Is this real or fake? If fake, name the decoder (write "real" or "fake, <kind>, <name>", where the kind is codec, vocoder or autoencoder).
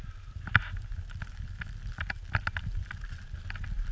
real